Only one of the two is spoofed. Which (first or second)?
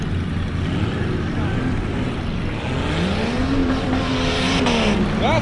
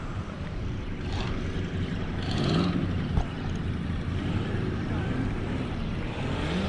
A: second